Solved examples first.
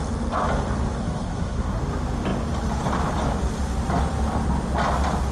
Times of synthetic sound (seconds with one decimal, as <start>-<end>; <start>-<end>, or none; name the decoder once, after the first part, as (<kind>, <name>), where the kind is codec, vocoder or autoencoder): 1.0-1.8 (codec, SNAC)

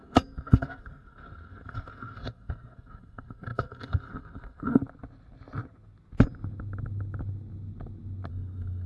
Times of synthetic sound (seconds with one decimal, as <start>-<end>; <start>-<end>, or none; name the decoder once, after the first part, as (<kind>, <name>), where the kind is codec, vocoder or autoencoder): 0.0-4.8 (codec, SNAC); 8.3-8.9

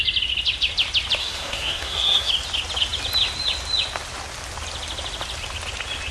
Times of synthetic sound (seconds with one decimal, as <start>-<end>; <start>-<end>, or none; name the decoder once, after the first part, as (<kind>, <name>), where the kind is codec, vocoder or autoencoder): 1.2-2.3 (codec, SNAC)

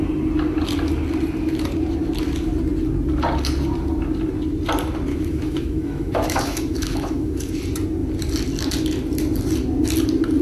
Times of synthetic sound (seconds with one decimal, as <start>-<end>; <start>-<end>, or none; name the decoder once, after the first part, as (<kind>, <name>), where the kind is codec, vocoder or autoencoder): 5.1-7.6 (autoencoder, DAC-VAE)